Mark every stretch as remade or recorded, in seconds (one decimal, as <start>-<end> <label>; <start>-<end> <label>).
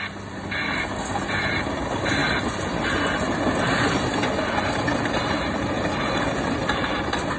0.0-7.4 recorded